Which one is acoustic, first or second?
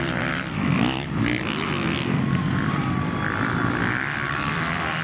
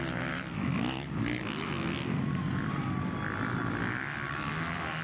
second